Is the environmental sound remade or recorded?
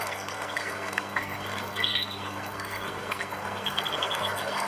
remade